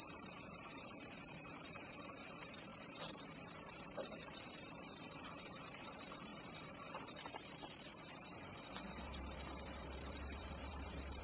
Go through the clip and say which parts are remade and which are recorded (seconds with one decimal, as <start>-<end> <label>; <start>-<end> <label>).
0.0-2.7 remade; 2.7-3.4 recorded; 3.4-11.2 remade